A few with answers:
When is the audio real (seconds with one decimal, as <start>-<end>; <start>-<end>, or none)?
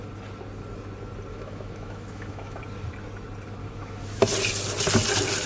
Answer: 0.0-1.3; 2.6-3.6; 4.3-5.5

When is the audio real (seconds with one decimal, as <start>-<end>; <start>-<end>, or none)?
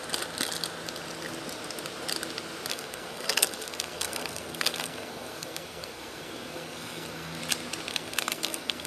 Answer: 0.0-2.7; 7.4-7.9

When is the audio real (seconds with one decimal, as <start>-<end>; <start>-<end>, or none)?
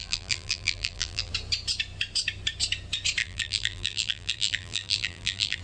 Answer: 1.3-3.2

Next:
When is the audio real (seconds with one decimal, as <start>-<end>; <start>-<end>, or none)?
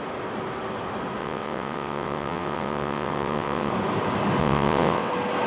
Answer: 0.0-1.2; 3.7-4.4; 5.1-5.5